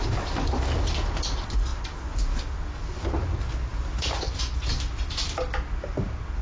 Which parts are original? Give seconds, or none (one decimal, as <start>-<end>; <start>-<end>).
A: 0.0-6.4